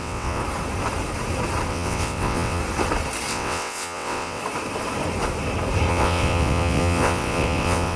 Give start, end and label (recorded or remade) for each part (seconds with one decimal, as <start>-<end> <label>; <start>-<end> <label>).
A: 0.0-0.4 remade; 0.4-1.7 recorded; 1.7-2.6 remade; 2.6-3.3 recorded; 3.3-4.4 remade; 4.4-5.9 recorded; 5.9-8.0 remade